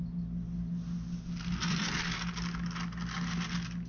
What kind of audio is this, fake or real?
real